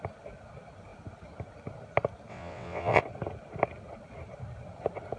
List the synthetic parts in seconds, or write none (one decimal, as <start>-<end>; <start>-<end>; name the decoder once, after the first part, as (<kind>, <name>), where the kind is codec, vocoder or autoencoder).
2.3-3.0 (vocoder, WaveNeXt)